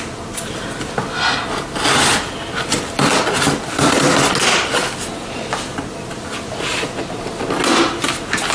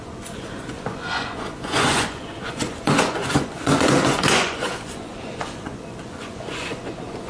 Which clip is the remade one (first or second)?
second